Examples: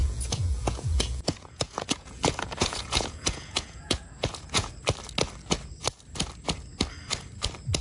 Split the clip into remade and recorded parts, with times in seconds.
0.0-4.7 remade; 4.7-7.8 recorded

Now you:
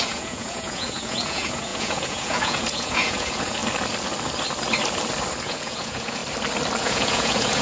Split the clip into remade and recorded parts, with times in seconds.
0.0-3.6 remade; 3.6-5.4 recorded; 5.4-6.2 remade; 6.2-6.8 recorded; 6.8-7.6 remade

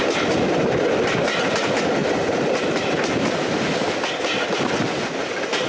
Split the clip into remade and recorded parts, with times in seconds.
0.0-5.7 recorded

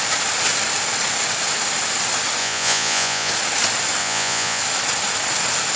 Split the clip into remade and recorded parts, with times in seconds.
0.0-2.4 recorded; 2.4-3.3 remade; 3.3-4.0 recorded; 4.0-4.6 remade; 4.6-5.8 recorded